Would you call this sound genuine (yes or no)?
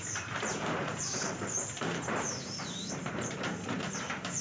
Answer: no